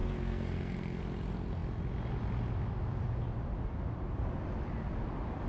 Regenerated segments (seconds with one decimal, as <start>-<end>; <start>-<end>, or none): 0.0-1.0